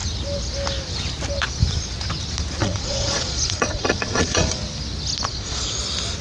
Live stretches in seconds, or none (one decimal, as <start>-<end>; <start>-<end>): 0.0-2.6; 4.6-5.3; 5.8-6.2